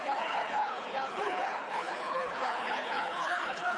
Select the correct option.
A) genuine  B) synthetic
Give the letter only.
B